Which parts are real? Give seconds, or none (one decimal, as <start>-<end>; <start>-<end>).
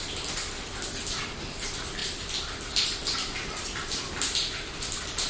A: 0.0-5.3